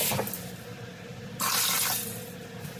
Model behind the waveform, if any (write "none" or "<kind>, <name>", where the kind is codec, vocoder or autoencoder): none